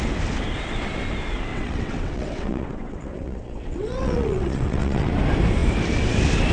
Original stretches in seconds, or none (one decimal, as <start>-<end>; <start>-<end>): 0.0-1.5; 5.1-6.5